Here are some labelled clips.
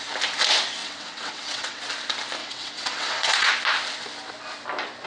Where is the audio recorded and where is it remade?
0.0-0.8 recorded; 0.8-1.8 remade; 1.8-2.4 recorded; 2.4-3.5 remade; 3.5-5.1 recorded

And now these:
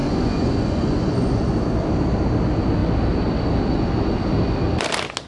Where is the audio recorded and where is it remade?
0.0-1.5 remade; 1.5-5.3 recorded

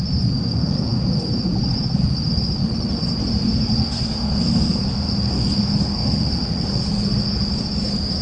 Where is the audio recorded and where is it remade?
0.0-0.5 recorded; 0.5-1.0 remade; 1.0-3.8 recorded; 3.8-6.8 remade; 6.8-8.2 recorded

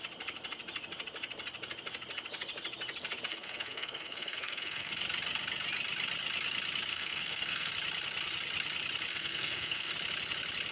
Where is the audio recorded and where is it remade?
0.0-3.3 recorded; 3.3-4.9 remade; 4.9-6.9 recorded; 6.9-7.7 remade; 7.7-9.1 recorded; 9.1-9.9 remade; 9.9-10.7 recorded

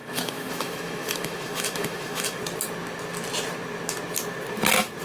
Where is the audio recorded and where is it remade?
0.0-2.4 remade; 2.4-5.0 recorded

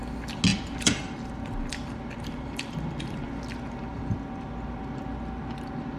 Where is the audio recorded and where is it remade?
0.0-0.5 recorded; 0.5-3.2 remade; 3.2-3.9 recorded; 3.9-5.4 remade; 5.4-6.0 recorded

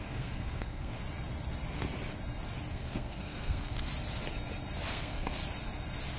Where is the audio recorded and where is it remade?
0.0-1.0 remade; 1.0-2.7 recorded; 2.7-3.9 remade; 3.9-4.9 recorded; 4.9-5.4 remade; 5.4-6.2 recorded